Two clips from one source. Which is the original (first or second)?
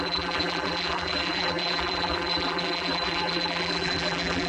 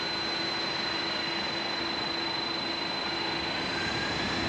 second